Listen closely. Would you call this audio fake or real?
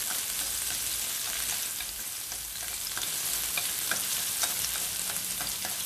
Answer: real